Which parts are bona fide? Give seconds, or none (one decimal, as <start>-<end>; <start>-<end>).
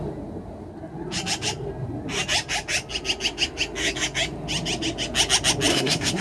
0.0-5.7